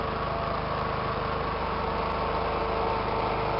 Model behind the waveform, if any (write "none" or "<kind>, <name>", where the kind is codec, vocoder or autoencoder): none